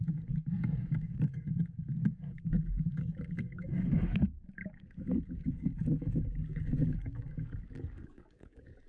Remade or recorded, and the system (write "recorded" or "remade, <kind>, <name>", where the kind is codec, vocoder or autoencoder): remade, codec, DAC